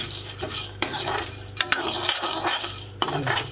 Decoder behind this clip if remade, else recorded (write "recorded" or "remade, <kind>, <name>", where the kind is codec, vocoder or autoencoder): remade, vocoder, BigVGAN v2